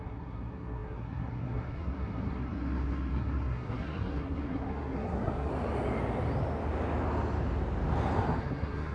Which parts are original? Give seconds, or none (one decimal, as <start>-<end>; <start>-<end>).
5.5-8.4